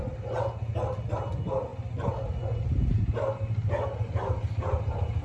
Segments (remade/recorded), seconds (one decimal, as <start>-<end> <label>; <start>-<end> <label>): 0.0-5.2 recorded